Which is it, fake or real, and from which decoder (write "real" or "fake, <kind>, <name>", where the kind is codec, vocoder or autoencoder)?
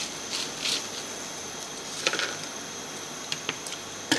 real